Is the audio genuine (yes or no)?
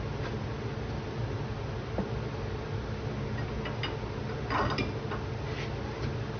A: yes